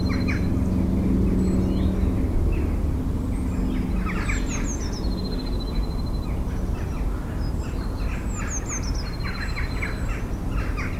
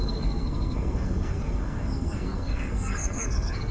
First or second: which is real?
first